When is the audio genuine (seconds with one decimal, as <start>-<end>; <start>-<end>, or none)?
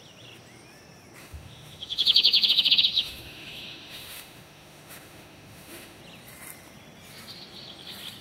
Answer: 0.0-1.2; 6.0-8.2